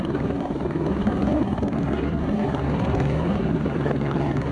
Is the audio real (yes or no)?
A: no